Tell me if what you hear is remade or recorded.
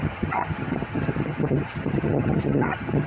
remade